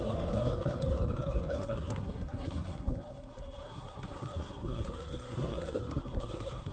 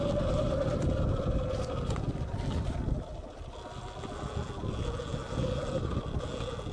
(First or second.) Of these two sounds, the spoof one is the first